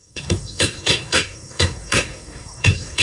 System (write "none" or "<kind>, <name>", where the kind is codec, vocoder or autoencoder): codec, SNAC